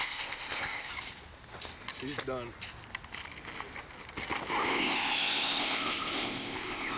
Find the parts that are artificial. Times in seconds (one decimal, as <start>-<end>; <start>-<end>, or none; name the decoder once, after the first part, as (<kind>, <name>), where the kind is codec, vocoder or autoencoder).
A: 0.0-0.9 (codec, ZipCodec); 4.6-7.0